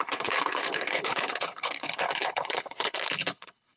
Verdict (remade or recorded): remade